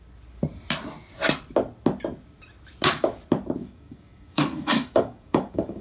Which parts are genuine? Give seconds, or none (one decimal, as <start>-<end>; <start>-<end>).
0.0-3.6